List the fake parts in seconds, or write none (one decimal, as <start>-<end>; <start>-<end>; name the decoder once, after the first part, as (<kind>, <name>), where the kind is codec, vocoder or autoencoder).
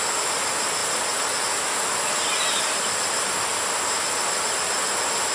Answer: none